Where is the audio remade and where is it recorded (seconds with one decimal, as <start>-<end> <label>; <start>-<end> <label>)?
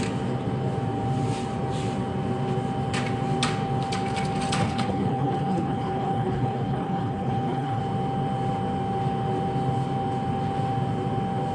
0.0-4.6 recorded; 4.6-7.8 remade; 7.8-11.5 recorded